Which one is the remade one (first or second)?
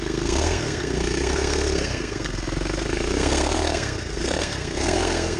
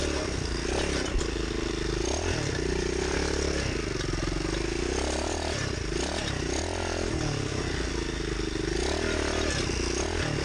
first